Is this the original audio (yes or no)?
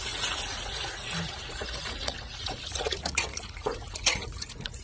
no